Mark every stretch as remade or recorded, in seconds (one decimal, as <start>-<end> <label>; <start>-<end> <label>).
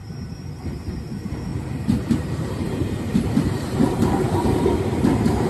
0.0-1.5 recorded; 1.5-4.8 remade; 4.8-5.5 recorded